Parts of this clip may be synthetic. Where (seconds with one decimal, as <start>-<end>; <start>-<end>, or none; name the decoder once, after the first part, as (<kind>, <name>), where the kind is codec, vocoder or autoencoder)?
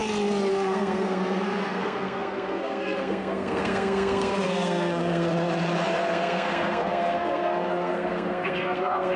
0.5-5.3 (codec, SNAC); 6.1-9.2